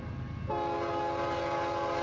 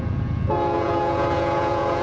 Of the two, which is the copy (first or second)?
second